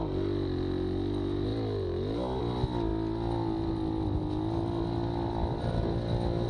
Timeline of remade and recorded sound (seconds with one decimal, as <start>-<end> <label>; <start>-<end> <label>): 0.0-6.5 recorded